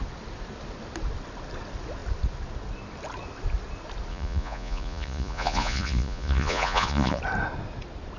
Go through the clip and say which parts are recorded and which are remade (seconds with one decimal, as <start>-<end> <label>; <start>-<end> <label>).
0.0-4.1 recorded; 4.1-7.2 remade; 7.2-8.2 recorded